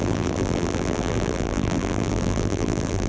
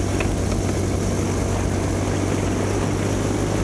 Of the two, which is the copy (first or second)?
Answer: first